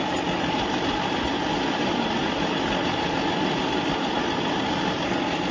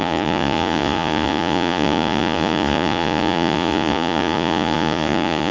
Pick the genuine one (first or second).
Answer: first